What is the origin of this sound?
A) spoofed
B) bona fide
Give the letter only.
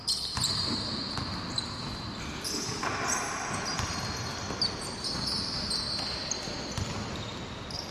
B